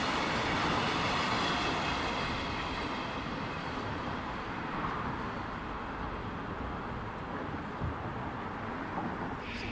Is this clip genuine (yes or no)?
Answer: yes